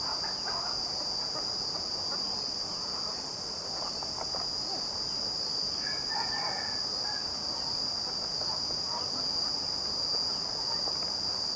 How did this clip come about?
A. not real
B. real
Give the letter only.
B